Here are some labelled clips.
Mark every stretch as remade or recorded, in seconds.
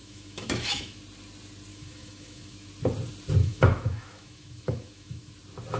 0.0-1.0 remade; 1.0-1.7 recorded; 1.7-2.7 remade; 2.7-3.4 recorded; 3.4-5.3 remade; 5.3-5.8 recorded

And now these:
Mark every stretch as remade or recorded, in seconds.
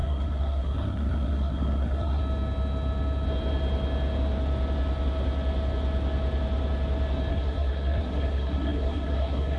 0.0-2.2 remade; 2.2-7.3 recorded; 7.3-9.6 remade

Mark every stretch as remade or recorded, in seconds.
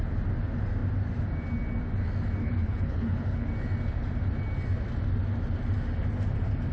0.0-2.4 recorded; 2.4-3.5 remade; 3.5-6.7 recorded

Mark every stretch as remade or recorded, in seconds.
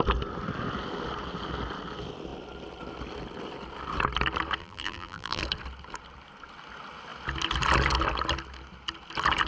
0.0-4.6 recorded; 4.6-5.4 remade; 5.4-9.5 recorded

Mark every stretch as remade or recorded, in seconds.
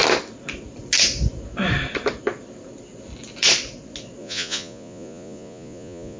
0.0-4.2 recorded; 4.2-6.2 remade